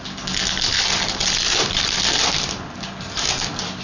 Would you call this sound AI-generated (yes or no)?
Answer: no